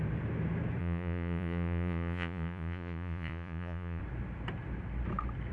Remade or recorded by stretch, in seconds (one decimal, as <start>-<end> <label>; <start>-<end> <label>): 0.0-0.8 recorded; 0.8-4.0 remade; 4.0-5.5 recorded

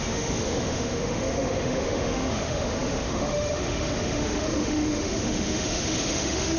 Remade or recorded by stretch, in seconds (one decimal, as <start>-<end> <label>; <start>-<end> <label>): 0.0-6.6 remade

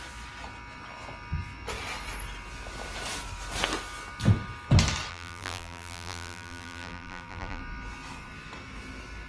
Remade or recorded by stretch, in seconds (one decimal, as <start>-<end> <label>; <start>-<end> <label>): 0.0-5.1 recorded; 5.1-7.6 remade; 7.6-9.3 recorded

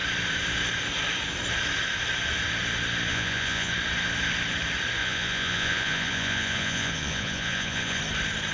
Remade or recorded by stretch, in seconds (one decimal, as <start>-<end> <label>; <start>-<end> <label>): 0.0-3.1 recorded; 3.1-3.7 remade; 3.7-5.0 recorded; 5.0-8.0 remade; 8.0-8.5 recorded

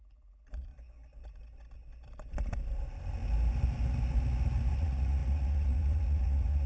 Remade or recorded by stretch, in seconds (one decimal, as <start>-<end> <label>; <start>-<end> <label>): 0.0-0.7 remade; 0.7-4.7 recorded; 4.7-6.7 remade

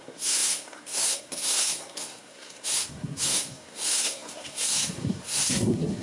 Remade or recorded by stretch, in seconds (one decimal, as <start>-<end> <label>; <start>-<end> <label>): 0.0-6.0 remade

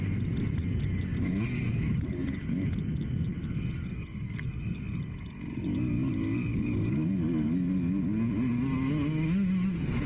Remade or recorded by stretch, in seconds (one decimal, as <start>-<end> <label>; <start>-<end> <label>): 0.0-6.5 recorded; 6.5-7.1 remade; 7.1-10.1 recorded

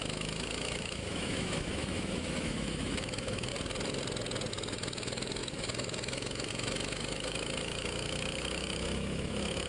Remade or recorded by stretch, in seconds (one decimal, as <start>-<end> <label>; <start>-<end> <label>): 0.0-3.5 remade; 3.5-4.5 recorded; 4.5-9.7 remade